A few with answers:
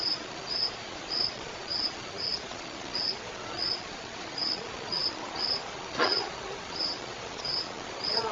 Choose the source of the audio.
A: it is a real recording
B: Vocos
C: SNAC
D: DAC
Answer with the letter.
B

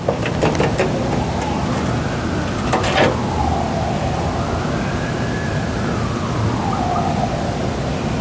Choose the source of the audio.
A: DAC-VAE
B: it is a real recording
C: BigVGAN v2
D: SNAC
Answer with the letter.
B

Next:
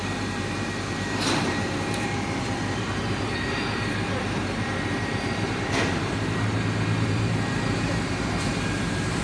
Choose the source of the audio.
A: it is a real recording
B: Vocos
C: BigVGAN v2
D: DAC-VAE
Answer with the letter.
C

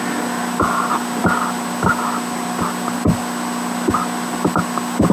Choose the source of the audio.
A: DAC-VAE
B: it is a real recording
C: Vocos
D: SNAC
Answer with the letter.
B